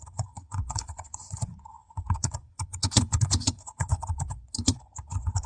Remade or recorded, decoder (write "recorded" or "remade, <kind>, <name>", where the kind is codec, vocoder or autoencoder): remade, vocoder, Vocos